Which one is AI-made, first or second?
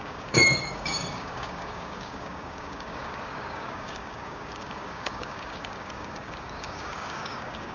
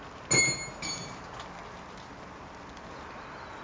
first